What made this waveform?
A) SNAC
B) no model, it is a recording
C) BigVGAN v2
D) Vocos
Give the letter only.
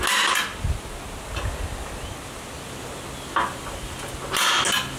B